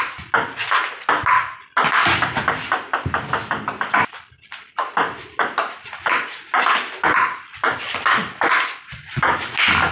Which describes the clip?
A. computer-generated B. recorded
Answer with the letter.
B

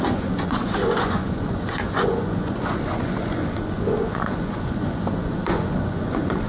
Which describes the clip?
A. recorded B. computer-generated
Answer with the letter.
B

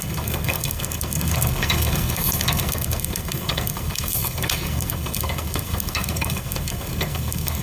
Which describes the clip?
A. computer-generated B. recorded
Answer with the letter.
A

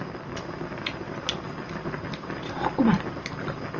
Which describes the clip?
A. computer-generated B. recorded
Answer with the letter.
B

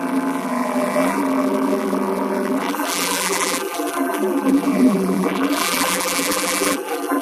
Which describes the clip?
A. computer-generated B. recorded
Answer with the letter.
A